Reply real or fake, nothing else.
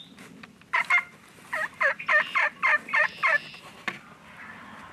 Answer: real